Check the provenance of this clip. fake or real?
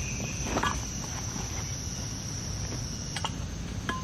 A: real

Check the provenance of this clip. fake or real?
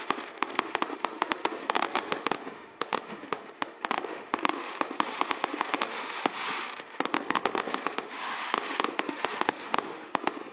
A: fake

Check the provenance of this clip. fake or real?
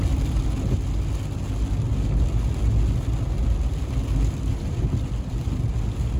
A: real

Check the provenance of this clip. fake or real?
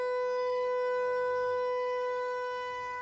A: fake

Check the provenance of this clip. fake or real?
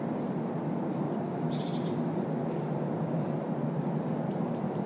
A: real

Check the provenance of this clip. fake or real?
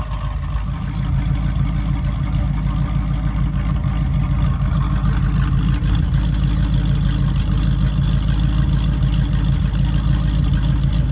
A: real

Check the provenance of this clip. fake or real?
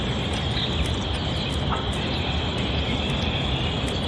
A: real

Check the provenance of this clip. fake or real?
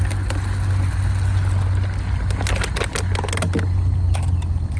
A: real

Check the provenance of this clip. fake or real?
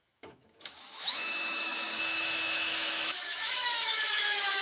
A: fake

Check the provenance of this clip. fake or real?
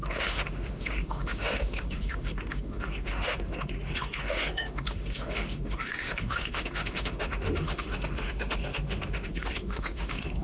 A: fake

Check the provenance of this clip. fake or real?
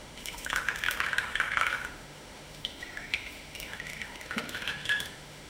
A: fake